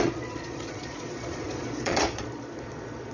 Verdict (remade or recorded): remade